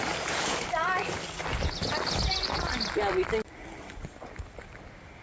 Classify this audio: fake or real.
real